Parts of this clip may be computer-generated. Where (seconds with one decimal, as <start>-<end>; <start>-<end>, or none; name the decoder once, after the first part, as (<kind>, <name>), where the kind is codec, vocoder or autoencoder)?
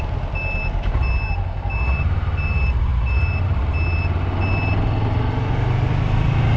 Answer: none